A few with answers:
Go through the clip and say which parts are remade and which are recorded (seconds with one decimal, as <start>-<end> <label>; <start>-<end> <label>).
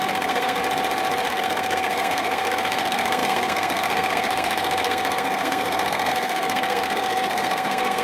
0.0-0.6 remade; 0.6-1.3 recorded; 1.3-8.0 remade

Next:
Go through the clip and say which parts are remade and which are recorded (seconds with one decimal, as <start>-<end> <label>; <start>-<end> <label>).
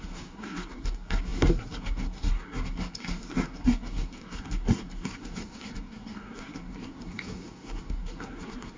0.0-8.8 remade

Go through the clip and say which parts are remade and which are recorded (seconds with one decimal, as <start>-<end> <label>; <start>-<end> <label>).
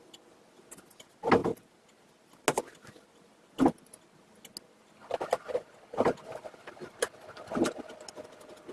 0.0-8.7 recorded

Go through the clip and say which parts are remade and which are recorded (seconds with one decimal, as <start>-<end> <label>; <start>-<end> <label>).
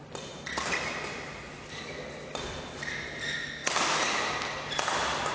0.0-5.3 recorded